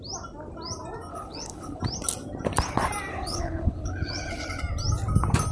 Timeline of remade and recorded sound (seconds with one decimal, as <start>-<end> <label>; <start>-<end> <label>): 0.0-1.1 recorded; 1.1-1.8 remade; 1.8-3.1 recorded; 3.1-4.6 remade; 4.6-5.5 recorded